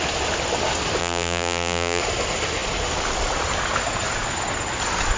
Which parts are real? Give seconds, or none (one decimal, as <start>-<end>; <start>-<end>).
0.0-1.0; 2.0-5.2